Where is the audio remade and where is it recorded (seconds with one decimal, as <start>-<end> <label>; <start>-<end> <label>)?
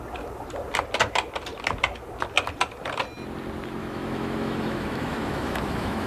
0.0-3.8 recorded; 3.8-6.1 remade